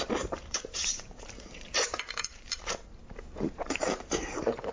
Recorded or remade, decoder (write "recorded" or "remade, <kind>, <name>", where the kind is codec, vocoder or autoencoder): remade, vocoder, BigVGAN v2